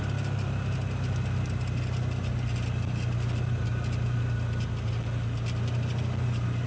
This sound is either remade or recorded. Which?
recorded